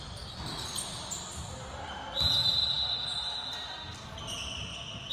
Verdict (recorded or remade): recorded